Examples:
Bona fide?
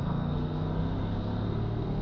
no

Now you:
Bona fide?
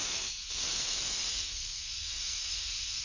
no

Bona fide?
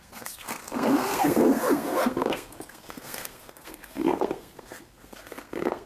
no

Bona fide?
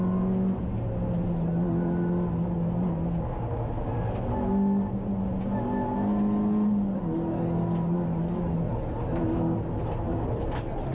yes